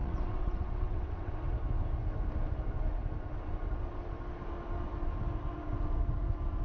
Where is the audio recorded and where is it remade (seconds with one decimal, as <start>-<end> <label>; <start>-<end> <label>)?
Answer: 0.0-1.3 remade; 1.3-6.6 recorded